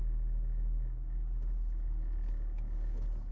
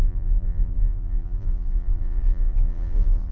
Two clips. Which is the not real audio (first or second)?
second